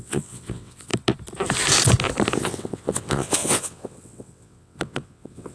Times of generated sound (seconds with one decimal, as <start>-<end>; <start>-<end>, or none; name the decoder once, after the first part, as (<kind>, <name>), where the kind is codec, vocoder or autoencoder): 0.0-0.9 (vocoder, WaveNeXt); 2.4-5.5